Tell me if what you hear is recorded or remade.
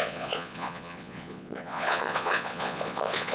remade